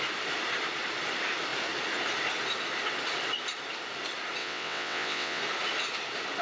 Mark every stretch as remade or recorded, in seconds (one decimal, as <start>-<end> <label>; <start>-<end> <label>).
0.0-4.4 recorded; 4.4-5.4 remade; 5.4-6.4 recorded